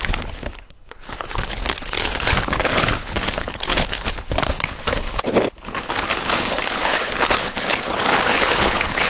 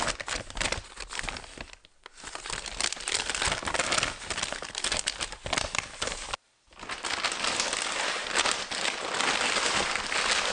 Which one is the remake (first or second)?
first